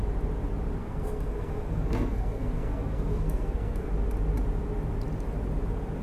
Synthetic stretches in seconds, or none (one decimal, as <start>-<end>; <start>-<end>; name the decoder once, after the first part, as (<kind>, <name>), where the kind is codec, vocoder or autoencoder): 0.8-3.9 (codec, SNAC)